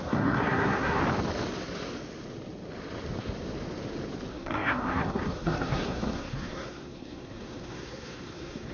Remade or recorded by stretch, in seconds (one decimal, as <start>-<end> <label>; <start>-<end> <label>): 0.0-1.0 remade; 1.0-4.3 recorded; 4.3-8.7 remade